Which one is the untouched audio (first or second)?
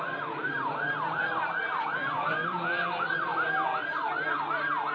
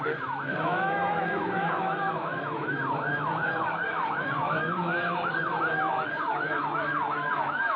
first